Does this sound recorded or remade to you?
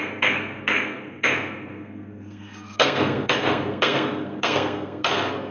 remade